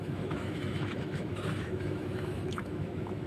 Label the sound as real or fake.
fake